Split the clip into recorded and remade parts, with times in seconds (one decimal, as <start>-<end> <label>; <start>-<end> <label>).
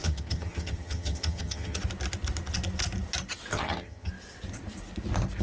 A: 0.0-1.8 remade; 1.8-3.5 recorded; 3.5-4.1 remade; 4.1-5.4 recorded